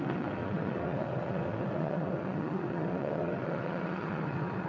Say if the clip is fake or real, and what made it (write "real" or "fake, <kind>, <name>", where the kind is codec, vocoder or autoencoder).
fake, vocoder, WaveNeXt